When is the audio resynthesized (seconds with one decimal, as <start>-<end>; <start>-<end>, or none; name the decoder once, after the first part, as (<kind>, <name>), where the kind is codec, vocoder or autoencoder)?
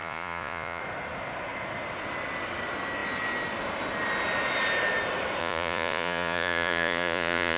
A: 0.0-0.8 (vocoder, Vocos); 5.4-7.6